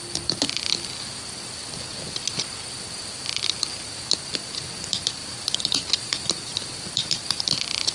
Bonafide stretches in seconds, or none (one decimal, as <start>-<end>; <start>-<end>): 0.0-5.2; 7.4-7.9